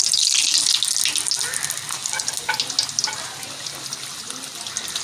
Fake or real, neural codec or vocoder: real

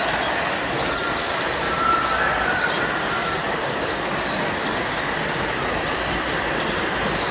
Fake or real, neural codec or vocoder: real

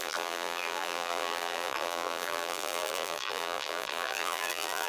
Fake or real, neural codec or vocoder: fake, vocoder, BigVGAN v2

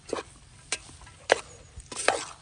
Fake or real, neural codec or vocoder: fake, vocoder, BigVGAN v2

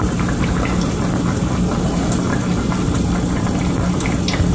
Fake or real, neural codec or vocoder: real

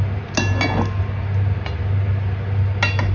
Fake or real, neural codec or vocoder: real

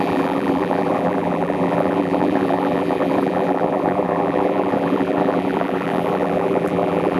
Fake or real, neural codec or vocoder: fake, vocoder, BigVGAN v2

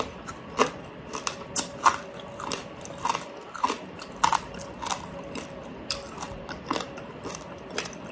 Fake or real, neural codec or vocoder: fake, vocoder, BigVGAN v2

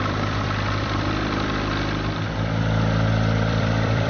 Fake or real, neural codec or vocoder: fake, vocoder, BigVGAN v2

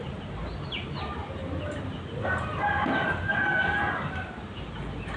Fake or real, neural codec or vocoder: real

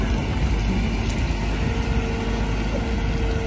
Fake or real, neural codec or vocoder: real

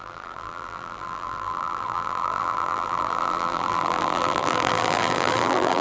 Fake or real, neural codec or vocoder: fake, vocoder, BigVGAN v2